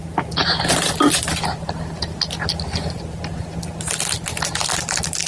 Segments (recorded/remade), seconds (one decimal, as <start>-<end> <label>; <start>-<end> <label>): 0.0-5.3 recorded